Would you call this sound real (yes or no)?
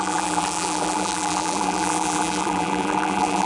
no